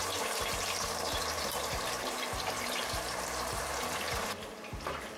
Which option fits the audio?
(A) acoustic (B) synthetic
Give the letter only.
B